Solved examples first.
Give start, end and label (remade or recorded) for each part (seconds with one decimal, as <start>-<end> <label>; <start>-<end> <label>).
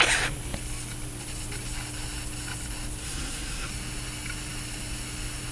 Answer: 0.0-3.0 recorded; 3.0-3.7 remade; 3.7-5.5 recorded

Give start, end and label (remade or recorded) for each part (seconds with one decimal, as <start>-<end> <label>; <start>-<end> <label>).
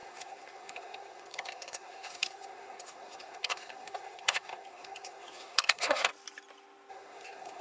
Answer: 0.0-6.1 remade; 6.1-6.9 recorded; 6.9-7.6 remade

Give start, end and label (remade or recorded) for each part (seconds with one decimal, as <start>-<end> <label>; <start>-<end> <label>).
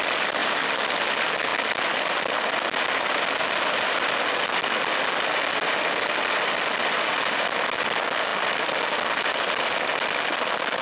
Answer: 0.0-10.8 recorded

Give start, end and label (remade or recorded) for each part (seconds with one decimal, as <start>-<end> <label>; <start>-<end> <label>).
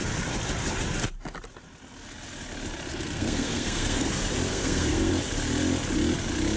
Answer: 0.0-2.9 recorded; 2.9-4.1 remade; 4.1-4.5 recorded; 4.5-5.1 remade; 5.1-6.6 recorded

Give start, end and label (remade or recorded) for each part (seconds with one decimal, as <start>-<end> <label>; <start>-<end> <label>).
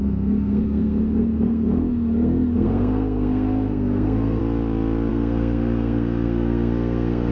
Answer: 0.0-4.4 remade; 4.4-5.1 recorded; 5.1-7.3 remade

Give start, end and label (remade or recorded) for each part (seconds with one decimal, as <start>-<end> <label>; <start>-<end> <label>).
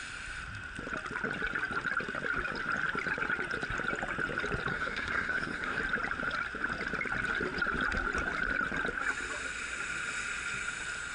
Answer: 0.0-4.7 recorded; 4.7-5.8 remade; 5.8-11.1 recorded